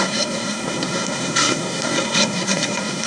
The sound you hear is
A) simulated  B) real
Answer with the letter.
A